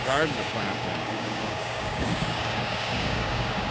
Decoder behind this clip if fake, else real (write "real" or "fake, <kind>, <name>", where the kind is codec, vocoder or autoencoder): fake, codec, DAC